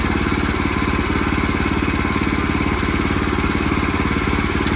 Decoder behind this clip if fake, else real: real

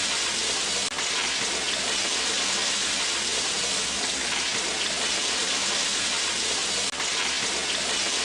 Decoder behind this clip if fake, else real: real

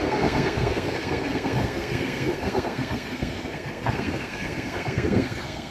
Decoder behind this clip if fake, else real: fake, codec, SNAC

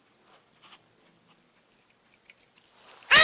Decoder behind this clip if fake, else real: real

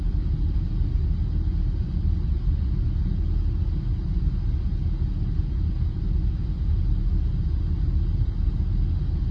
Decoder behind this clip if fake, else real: real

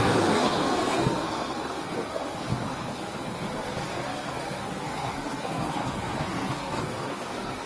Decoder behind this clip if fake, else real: fake, codec, SNAC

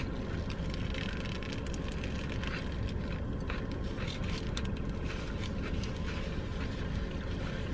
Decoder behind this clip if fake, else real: real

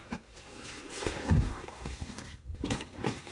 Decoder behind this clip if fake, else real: fake, codec, SNAC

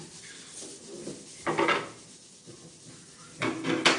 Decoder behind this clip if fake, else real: real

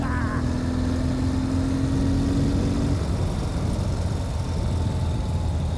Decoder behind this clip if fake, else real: real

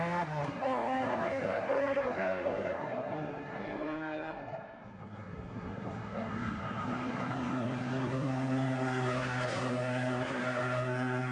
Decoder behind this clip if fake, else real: fake, codec, SNAC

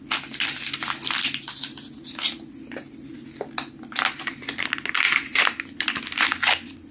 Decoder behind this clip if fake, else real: real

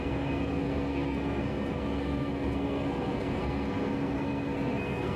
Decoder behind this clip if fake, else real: fake, codec, SNAC